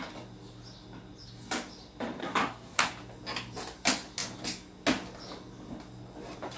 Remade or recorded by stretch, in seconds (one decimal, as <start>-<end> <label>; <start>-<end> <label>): 0.0-2.2 recorded; 2.2-2.9 remade; 2.9-6.6 recorded